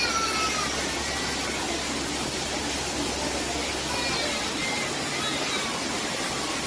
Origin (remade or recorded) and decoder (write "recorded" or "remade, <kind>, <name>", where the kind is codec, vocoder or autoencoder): recorded